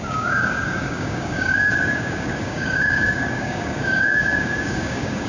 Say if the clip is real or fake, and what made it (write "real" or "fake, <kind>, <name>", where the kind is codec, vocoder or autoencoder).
fake, codec, DAC